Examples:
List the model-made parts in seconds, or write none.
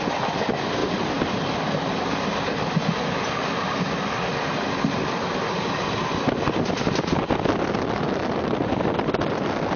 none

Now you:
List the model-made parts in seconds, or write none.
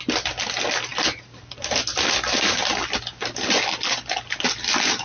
none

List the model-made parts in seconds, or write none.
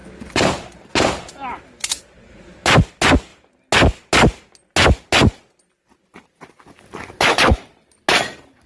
none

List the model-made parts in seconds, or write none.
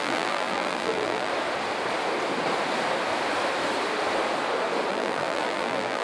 0.0-1.3 (vocoder, BigVGAN v2); 4.9-6.0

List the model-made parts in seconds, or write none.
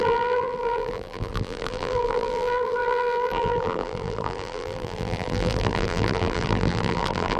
0.0-7.4 (vocoder, BigVGAN v2)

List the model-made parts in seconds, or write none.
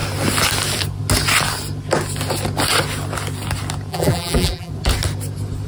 3.9-4.7 (vocoder, BigVGAN v2)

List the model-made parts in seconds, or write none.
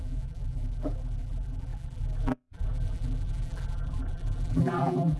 0.0-5.2 (vocoder, BigVGAN v2)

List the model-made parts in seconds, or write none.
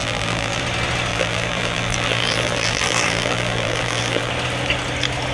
0.0-0.6 (vocoder, BigVGAN v2); 1.1-4.3